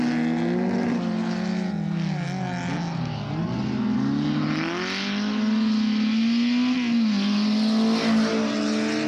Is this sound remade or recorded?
recorded